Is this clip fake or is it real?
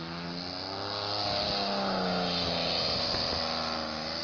real